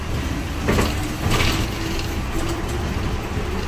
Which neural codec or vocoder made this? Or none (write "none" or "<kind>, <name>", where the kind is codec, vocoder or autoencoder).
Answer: none